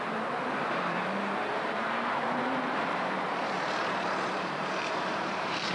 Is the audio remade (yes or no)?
yes